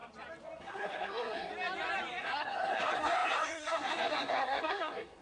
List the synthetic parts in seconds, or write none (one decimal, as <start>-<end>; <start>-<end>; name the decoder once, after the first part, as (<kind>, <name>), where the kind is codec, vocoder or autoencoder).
0.6-1.5 (codec, SNAC); 2.2-5.2